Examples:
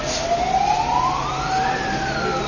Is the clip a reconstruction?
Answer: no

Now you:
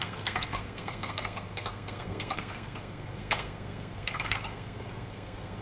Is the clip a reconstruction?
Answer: yes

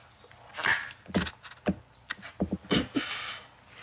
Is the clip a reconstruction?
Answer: no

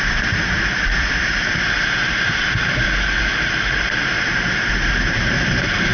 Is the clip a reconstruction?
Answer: yes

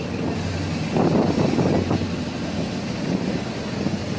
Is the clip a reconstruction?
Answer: no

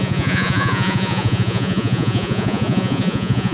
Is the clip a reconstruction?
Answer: yes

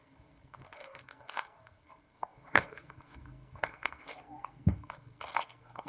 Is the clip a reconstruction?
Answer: yes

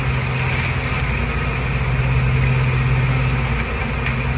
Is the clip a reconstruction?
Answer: no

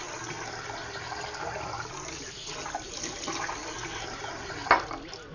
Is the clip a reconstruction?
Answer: no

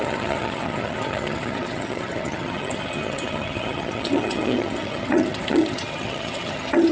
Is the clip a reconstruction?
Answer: yes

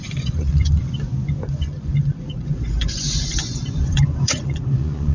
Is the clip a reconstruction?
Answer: yes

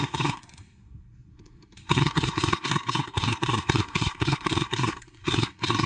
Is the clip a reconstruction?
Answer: yes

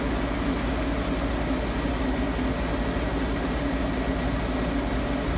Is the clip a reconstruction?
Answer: no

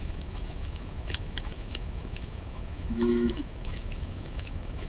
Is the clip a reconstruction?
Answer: yes